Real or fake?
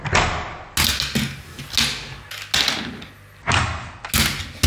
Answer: real